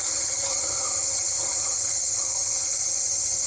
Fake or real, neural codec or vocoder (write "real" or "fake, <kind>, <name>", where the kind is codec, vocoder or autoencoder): fake, vocoder, HiFi-GAN